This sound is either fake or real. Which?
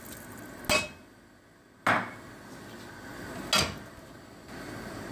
real